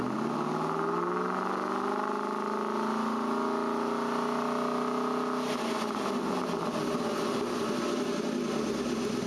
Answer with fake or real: real